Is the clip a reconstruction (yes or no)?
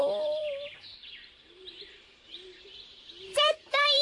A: yes